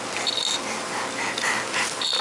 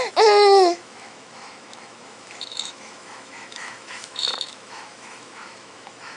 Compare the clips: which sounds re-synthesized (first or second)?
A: second